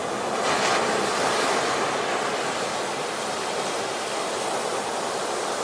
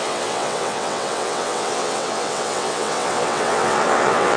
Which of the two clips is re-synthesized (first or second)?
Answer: second